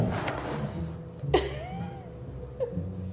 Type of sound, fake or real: real